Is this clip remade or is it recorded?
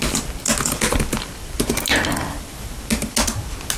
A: recorded